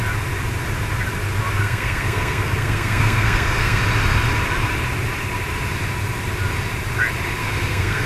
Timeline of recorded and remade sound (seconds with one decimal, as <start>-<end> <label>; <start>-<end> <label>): 0.0-1.6 recorded; 1.6-3.8 remade; 3.8-7.4 recorded; 7.4-8.1 remade

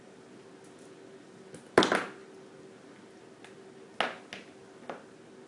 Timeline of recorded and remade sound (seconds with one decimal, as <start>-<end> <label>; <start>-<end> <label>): 0.0-5.5 recorded

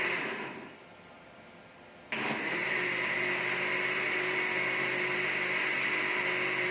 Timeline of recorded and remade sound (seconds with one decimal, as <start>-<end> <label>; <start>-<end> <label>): 0.0-6.7 recorded

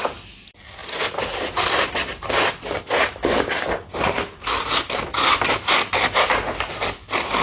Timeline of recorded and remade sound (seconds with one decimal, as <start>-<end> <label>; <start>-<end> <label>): 0.0-0.8 recorded; 0.8-1.8 remade; 1.8-5.1 recorded; 5.1-5.8 remade; 5.8-7.4 recorded